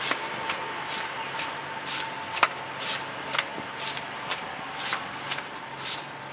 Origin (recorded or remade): recorded